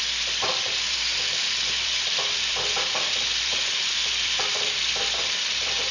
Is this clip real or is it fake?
fake